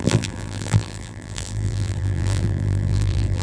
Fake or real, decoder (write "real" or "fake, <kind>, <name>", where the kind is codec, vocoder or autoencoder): fake, vocoder, BigVGAN v2